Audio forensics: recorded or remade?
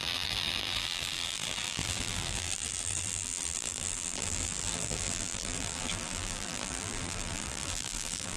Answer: remade